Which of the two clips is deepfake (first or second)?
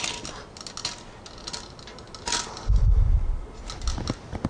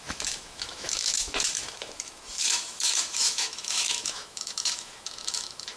second